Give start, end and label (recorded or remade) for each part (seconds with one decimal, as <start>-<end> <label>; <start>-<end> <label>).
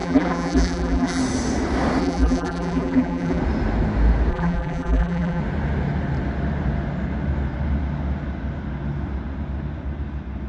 0.0-1.2 remade; 1.2-2.0 recorded; 2.0-3.4 remade; 3.4-4.3 recorded; 4.3-5.4 remade; 5.4-10.5 recorded